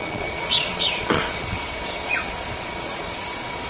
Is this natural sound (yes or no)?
no